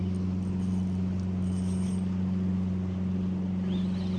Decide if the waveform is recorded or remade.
recorded